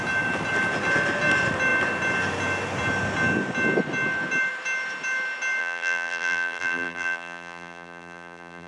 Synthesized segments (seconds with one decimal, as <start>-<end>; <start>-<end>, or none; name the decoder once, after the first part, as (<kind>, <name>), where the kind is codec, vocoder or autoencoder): 5.6-8.7 (vocoder, BigVGAN v2)